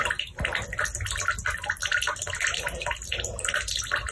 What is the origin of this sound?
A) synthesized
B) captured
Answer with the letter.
B